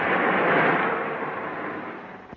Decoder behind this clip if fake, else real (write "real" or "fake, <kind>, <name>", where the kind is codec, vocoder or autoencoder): real